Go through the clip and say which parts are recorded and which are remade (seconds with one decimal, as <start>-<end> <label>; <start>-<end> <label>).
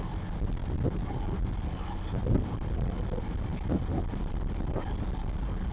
0.0-5.7 recorded